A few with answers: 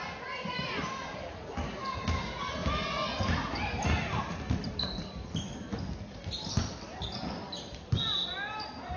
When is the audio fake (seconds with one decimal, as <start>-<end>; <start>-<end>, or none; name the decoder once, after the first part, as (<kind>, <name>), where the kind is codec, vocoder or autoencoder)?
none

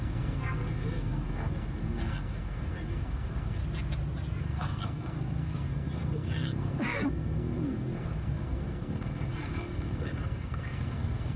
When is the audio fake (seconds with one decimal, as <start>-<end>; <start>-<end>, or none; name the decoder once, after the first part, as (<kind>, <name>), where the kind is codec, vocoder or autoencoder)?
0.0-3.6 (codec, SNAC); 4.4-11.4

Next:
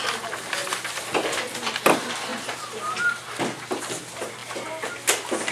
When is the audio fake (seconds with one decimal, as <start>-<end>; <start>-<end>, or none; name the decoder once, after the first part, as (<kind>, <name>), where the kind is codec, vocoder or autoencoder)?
0.6-1.4 (vocoder, BigVGAN v2)